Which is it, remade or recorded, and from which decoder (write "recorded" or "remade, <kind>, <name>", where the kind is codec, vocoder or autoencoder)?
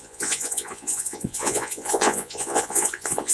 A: remade, vocoder, Vocos